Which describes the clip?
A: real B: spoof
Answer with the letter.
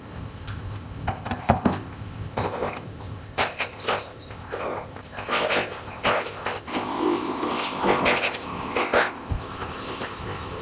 B